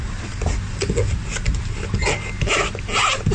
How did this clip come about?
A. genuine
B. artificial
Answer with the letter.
A